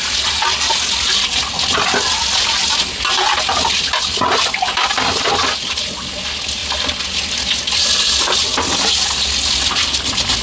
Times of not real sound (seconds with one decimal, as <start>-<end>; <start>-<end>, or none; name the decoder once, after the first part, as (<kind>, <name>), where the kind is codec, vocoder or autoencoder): none